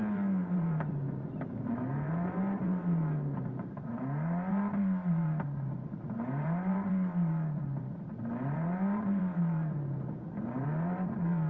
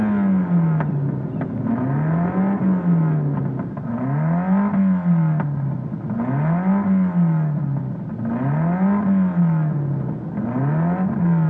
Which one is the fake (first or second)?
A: first